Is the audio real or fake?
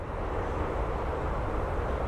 real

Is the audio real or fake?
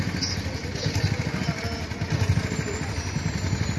real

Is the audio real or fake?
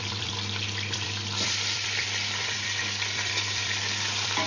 fake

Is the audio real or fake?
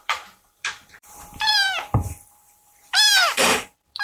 fake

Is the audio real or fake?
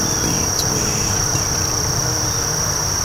real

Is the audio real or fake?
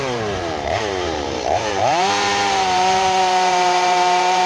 fake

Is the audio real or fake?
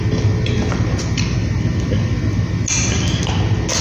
real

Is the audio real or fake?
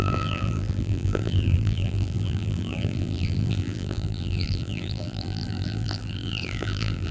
fake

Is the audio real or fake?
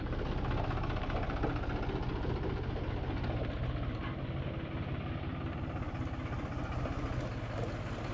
real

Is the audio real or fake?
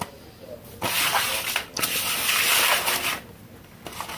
real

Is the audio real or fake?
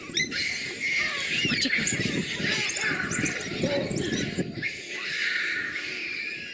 real